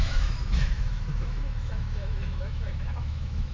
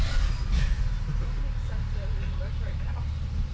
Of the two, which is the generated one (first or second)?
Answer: first